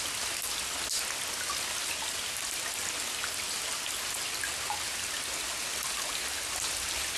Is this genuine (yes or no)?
yes